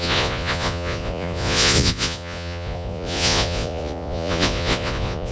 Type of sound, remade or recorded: remade